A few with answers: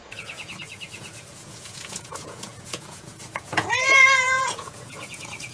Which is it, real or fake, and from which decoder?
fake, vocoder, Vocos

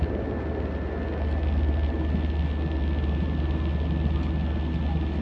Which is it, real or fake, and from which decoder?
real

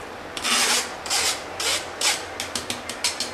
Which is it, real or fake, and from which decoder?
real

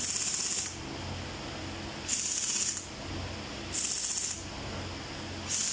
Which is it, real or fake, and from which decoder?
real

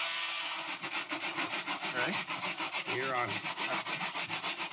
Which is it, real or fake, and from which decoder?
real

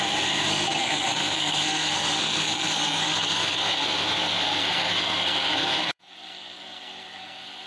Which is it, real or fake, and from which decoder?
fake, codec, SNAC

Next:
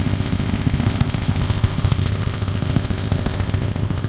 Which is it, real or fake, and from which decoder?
fake, codec, ZipCodec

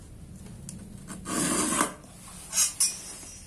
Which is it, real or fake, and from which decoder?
real